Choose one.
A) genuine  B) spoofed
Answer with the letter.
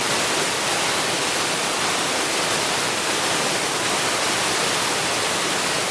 A